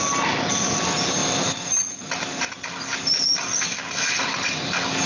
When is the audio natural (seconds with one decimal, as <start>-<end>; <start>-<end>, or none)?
0.0-5.1